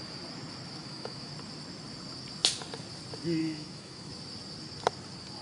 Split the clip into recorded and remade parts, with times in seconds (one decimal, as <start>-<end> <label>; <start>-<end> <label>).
0.0-0.8 recorded; 0.8-1.3 remade; 1.3-3.4 recorded; 3.4-4.1 remade; 4.1-5.4 recorded